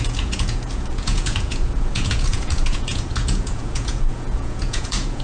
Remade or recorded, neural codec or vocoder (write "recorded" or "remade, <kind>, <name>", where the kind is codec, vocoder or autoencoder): remade, vocoder, Vocos